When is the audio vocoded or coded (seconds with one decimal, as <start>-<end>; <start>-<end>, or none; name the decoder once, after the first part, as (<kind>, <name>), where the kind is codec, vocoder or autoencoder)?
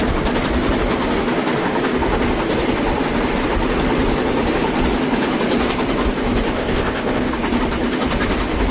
6.5-7.3 (codec, ZipCodec)